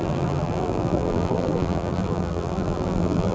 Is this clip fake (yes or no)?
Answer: yes